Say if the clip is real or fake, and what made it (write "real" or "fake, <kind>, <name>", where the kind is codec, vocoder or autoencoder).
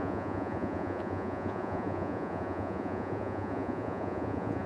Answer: fake, vocoder, Vocos